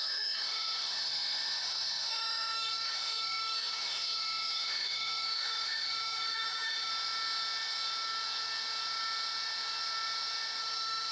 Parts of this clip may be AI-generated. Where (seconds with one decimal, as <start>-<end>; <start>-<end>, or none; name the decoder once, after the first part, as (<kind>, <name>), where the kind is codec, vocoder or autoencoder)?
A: 0.0-6.9 (autoencoder, DAC-VAE); 10.6-11.1

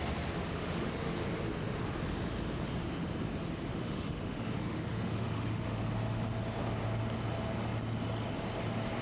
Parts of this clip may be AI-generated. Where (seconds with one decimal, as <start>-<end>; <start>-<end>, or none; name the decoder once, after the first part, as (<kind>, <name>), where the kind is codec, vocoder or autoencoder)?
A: 0.4-0.9 (autoencoder, DAC-VAE); 3.7-5.8

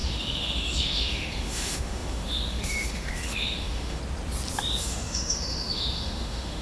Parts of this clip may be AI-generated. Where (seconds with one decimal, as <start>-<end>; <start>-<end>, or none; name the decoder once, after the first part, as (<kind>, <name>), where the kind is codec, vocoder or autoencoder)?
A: 0.0-4.0 (autoencoder, DAC-VAE); 4.8-6.6

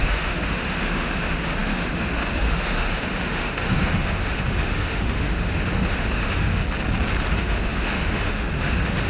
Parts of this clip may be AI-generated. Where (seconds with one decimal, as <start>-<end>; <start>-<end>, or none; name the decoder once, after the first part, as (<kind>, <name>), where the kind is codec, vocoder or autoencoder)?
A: 0.0-6.6 (autoencoder, DAC-VAE); 7.3-9.1